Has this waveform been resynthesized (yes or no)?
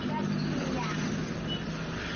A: no